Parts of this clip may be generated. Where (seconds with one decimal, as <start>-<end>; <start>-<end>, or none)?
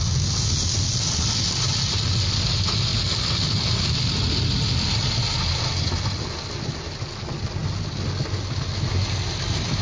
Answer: none